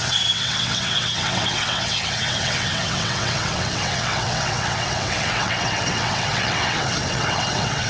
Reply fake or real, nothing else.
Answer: fake